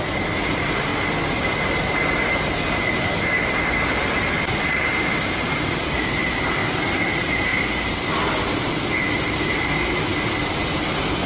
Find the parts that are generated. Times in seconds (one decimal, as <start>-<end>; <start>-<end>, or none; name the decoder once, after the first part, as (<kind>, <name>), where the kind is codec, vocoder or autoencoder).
0.0-0.9 (vocoder, BigVGAN v2); 4.4-6.6; 7.1-7.5; 9.0-11.3